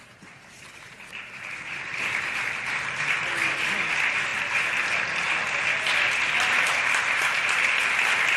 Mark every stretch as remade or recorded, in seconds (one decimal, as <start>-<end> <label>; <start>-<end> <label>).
0.0-8.4 recorded

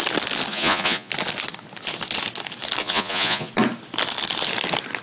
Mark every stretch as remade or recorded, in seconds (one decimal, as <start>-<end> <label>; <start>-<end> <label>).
0.0-0.5 recorded; 0.5-1.1 remade; 1.1-2.8 recorded; 2.8-3.5 remade; 3.5-5.0 recorded

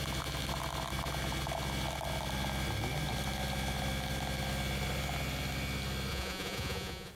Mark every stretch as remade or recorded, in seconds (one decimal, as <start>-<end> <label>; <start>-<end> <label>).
0.0-6.1 recorded; 6.1-7.1 remade

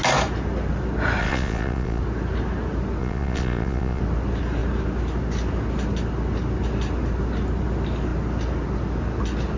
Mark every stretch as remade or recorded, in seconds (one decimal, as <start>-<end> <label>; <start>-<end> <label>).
0.0-1.2 recorded; 1.2-2.0 remade; 2.0-3.0 recorded; 3.0-4.0 remade; 4.0-9.6 recorded

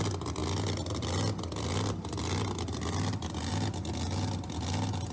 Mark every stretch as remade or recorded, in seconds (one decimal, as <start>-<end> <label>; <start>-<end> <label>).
0.0-5.1 recorded

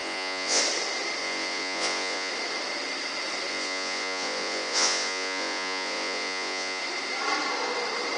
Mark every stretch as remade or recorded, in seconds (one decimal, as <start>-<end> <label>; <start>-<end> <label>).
0.0-0.6 remade; 0.6-1.2 recorded; 1.2-2.3 remade; 2.3-3.5 recorded; 3.5-6.8 remade; 6.8-8.2 recorded

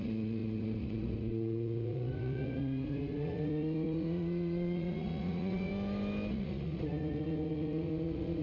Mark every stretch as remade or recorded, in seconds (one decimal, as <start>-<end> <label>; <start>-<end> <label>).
0.0-5.7 remade; 5.7-6.3 recorded; 6.3-8.4 remade

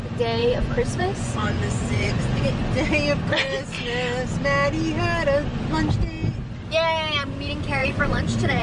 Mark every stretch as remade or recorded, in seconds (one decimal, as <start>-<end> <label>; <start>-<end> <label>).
0.0-0.4 recorded; 0.4-2.4 remade; 2.4-7.8 recorded; 7.8-8.6 remade